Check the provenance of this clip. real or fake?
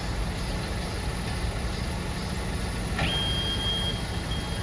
real